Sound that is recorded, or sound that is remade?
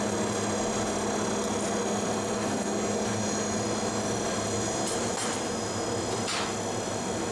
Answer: recorded